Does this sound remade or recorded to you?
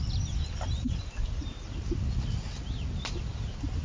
recorded